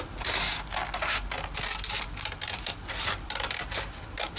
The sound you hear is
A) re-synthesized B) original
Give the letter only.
B